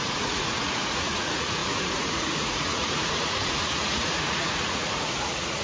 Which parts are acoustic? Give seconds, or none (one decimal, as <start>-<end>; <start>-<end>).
none